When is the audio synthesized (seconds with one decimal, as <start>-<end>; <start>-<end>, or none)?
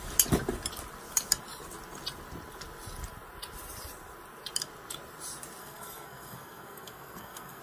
5.6-7.6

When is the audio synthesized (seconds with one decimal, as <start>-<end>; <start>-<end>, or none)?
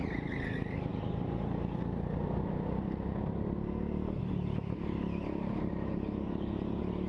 none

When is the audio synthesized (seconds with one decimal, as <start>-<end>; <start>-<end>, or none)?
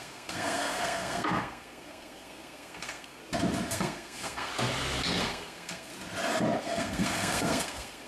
0.0-3.2; 3.7-4.5; 5.2-5.9; 6.6-8.1